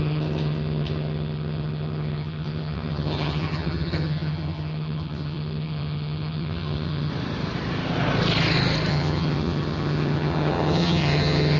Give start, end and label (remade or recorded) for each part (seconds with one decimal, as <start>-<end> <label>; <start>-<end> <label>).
0.0-7.1 remade; 7.1-8.9 recorded; 8.9-11.6 remade